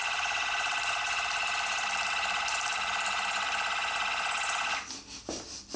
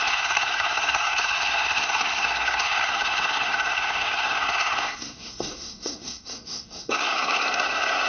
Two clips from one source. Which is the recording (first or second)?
first